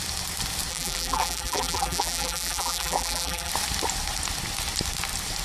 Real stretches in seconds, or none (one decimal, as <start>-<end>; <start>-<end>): 0.0-0.7; 3.5-5.4